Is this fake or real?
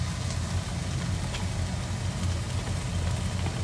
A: real